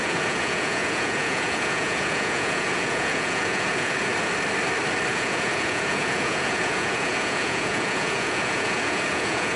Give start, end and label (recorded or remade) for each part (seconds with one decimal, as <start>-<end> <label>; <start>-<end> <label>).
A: 0.0-4.1 remade; 4.1-5.1 recorded; 5.1-9.6 remade